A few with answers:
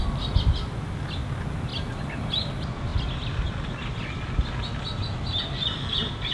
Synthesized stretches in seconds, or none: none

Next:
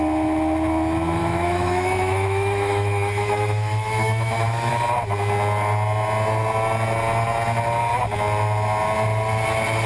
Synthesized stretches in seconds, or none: 1.2-4.7 (autoencoder, DAC-VAE)

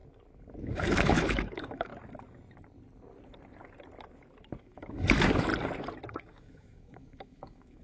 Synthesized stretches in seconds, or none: 0.6-1.9 (autoencoder, DAC-VAE); 4.6-5.5; 6.1-7.8

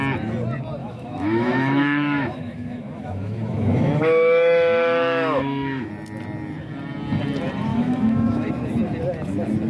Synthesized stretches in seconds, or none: 0.8-5.9 (autoencoder, DAC-VAE); 7.7-8.5

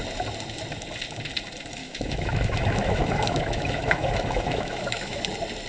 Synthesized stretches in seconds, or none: 1.8-5.2 (autoencoder, DAC-VAE)